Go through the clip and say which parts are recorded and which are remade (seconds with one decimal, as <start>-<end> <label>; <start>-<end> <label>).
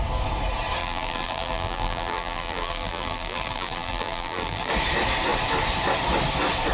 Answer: 0.0-0.8 recorded; 0.8-4.7 remade; 4.7-6.7 recorded